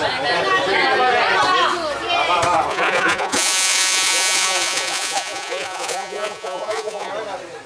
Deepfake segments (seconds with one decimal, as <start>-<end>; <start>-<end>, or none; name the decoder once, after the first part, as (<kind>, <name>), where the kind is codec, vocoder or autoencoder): 2.7-7.1 (vocoder, Vocos)